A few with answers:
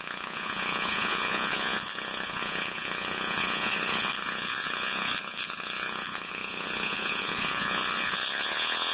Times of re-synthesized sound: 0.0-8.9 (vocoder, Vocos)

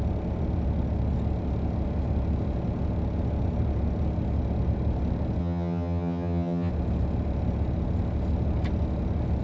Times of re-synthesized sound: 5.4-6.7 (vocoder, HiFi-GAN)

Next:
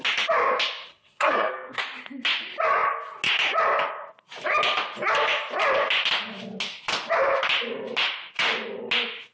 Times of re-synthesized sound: 0.9-1.8 (codec, SNAC)